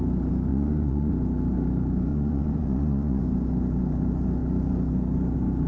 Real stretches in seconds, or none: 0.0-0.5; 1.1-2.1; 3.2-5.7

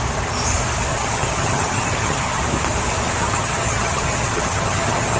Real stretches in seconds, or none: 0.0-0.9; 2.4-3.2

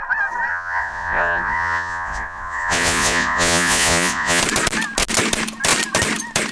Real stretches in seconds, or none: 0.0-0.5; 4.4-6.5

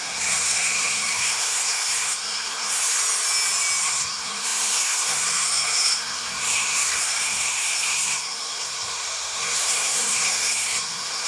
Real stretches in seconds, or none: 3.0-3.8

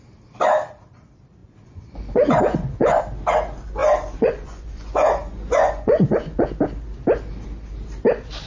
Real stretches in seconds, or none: 0.0-1.4; 3.0-3.8; 6.6-8.5